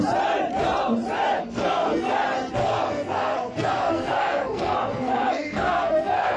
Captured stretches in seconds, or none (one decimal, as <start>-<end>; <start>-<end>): 0.0-1.4; 2.1-2.6

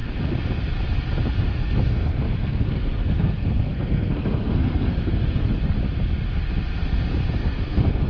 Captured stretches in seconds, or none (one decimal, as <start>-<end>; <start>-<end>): 0.0-1.5; 5.4-7.4

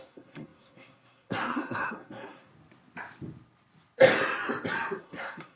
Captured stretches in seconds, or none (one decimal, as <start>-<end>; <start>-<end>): 2.5-5.0

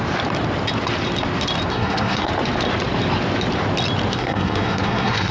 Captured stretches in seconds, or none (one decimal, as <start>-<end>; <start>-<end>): 0.0-1.7; 2.3-4.1

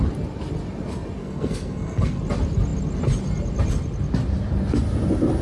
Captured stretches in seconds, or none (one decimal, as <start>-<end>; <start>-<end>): 0.0-1.2; 2.2-5.4

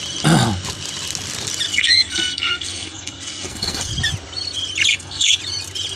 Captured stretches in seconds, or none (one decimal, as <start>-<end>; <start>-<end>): 0.0-1.7; 3.9-4.9; 5.4-6.0

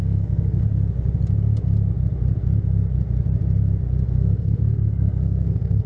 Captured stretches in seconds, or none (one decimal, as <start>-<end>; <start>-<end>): 0.6-4.1